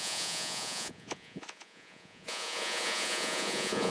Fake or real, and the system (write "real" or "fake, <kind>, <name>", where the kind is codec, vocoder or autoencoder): fake, vocoder, Vocos